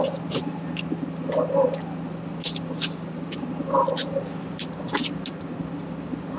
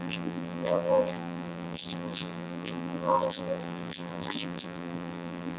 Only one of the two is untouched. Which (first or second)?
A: first